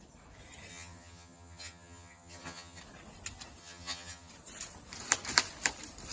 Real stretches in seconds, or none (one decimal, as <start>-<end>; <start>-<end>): 0.0-0.7; 2.8-3.6; 4.3-6.1